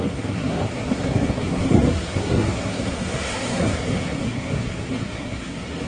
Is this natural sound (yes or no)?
no